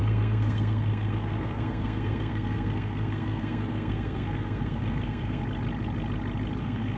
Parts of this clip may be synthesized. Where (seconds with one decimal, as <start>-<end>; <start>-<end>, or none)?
0.0-5.4; 6.6-7.0